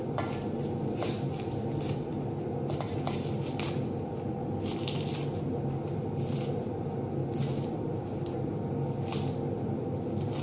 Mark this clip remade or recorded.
recorded